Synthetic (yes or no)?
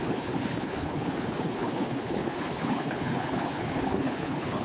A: yes